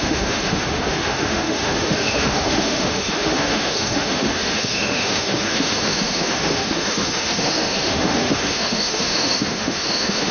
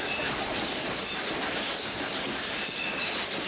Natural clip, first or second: second